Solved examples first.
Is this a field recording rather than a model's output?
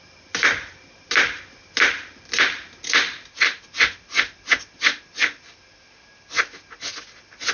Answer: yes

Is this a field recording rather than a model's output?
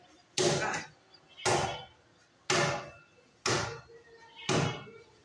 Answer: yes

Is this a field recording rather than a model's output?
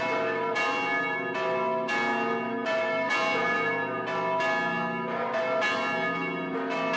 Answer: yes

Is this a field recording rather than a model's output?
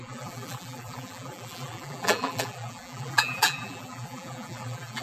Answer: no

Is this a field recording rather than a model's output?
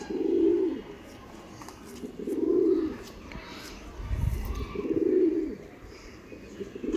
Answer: yes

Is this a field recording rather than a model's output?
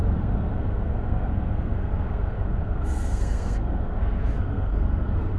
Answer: no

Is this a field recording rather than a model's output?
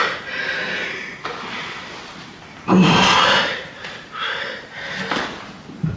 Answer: yes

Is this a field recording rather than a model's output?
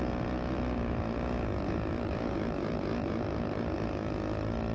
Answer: yes